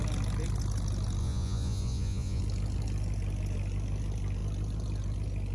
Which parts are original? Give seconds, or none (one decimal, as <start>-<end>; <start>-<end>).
0.0-1.2; 2.4-5.5